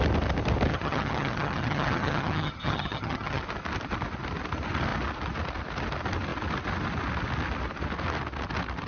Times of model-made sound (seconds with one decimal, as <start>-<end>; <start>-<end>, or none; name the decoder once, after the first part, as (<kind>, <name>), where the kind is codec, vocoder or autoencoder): 0.7-3.4 (vocoder, HiFi-GAN)